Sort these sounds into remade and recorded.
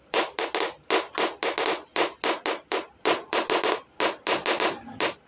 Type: recorded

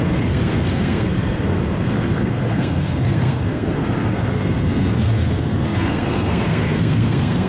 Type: remade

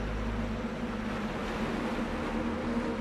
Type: recorded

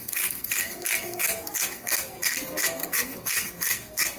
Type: remade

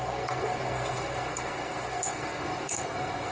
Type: remade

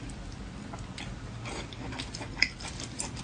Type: recorded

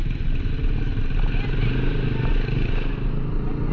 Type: recorded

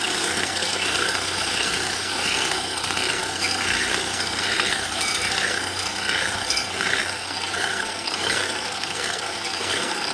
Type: remade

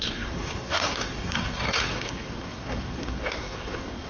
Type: remade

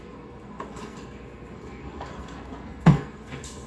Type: remade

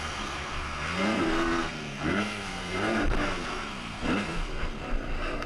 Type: remade